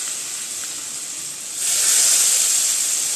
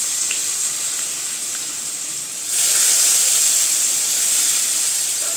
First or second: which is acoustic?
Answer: first